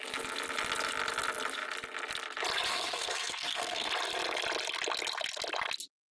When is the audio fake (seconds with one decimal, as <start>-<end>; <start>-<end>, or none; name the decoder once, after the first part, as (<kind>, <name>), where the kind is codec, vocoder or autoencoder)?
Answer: 2.7-3.9 (codec, SNAC)